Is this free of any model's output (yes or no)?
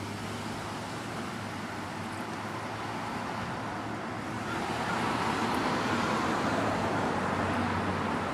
yes